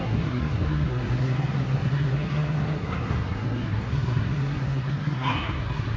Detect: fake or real fake